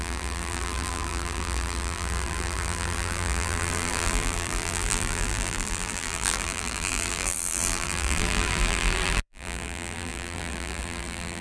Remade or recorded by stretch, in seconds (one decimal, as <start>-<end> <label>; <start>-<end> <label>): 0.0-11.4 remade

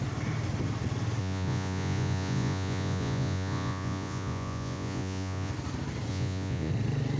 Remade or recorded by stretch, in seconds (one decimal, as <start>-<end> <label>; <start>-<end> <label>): 0.0-1.2 recorded; 1.2-5.5 remade; 5.5-6.1 recorded; 6.1-6.7 remade; 6.7-7.2 recorded

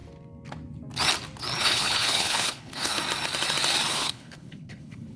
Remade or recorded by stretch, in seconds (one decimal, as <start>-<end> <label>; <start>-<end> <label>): 0.0-1.6 recorded; 1.6-3.0 remade; 3.0-3.9 recorded; 3.9-5.2 remade

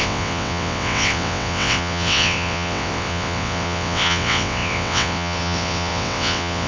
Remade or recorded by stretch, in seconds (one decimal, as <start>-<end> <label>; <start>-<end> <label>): 0.0-6.7 remade

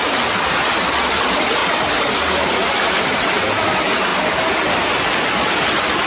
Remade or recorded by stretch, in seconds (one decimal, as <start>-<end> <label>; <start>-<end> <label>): 0.0-6.1 recorded

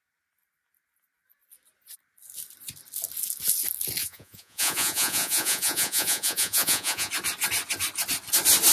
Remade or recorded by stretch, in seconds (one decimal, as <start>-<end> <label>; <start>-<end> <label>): 0.0-4.0 recorded; 4.0-7.1 remade; 7.1-8.7 recorded